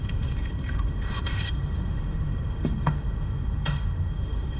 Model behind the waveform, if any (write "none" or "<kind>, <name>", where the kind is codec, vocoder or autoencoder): autoencoder, DAC-VAE